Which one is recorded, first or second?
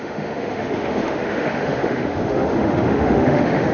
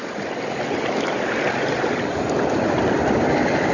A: second